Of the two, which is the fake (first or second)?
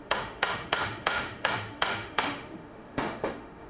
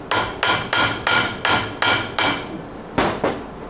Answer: first